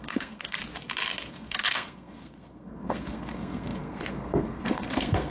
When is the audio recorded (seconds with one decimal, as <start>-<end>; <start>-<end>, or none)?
0.6-1.3